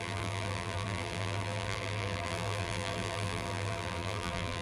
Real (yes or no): no